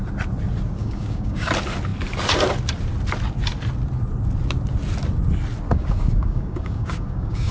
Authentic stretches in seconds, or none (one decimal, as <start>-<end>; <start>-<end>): 0.0-0.8; 1.5-5.7